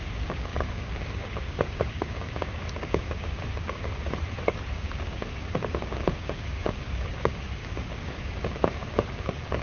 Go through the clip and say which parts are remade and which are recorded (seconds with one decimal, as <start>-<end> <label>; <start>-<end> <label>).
0.0-3.9 remade; 3.9-4.8 recorded; 4.8-9.6 remade